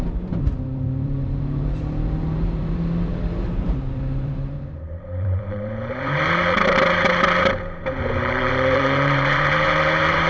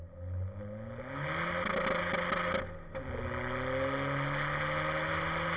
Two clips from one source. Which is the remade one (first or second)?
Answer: first